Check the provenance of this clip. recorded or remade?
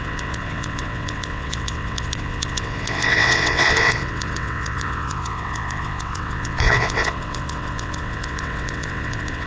remade